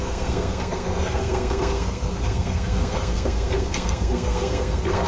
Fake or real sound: fake